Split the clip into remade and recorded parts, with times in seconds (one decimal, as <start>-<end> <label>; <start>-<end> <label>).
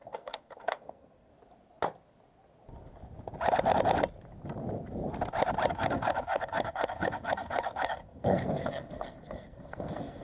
0.0-1.3 remade; 1.3-5.7 recorded; 5.7-10.2 remade